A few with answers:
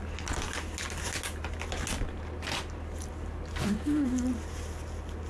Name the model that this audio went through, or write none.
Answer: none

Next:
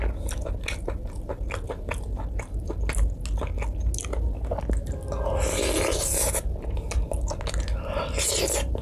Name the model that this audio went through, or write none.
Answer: none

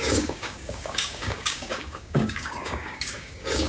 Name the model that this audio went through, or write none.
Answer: codec, DAC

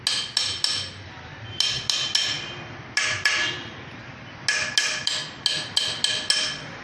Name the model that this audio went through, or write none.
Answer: none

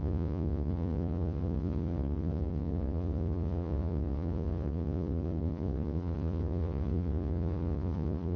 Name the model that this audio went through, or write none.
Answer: vocoder, Vocos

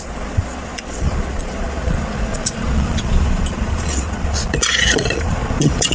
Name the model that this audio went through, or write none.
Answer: vocoder, Vocos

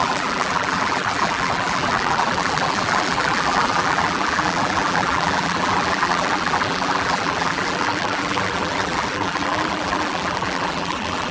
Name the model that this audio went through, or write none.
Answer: vocoder, BigVGAN v2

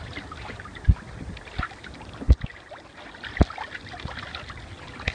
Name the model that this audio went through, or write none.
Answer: none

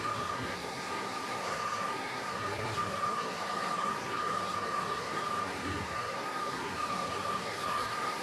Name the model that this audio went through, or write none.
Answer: codec, SNAC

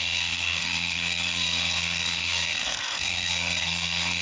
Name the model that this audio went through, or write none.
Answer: codec, SNAC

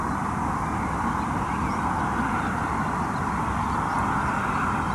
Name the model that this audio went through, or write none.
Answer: none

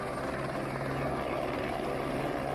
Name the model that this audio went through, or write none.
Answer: none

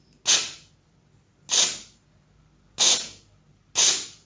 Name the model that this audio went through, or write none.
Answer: none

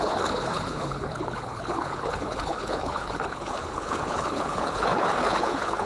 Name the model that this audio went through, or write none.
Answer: codec, HILCodec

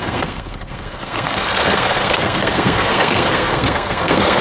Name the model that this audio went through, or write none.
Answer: codec, SNAC